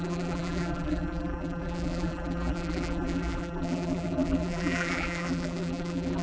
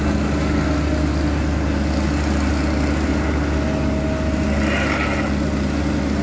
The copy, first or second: first